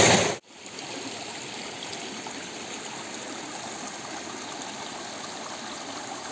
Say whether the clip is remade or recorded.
recorded